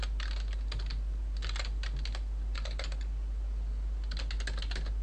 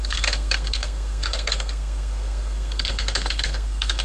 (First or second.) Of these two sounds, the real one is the first